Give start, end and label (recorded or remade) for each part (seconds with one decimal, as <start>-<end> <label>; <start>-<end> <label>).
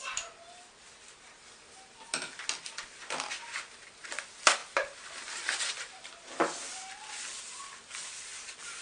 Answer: 0.0-8.3 recorded; 8.3-8.8 remade